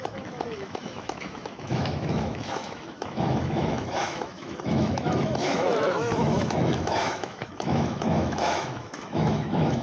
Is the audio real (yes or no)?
no